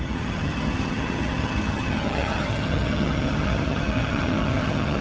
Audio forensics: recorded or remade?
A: remade